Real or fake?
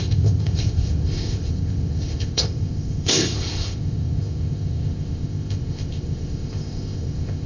fake